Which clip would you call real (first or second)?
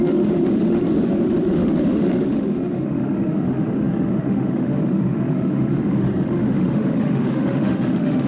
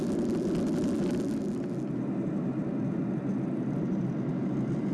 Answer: second